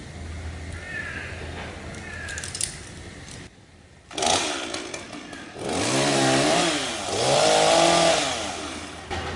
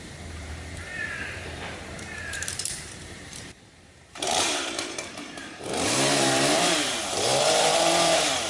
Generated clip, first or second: second